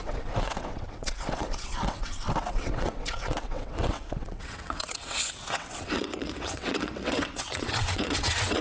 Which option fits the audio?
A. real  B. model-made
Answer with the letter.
B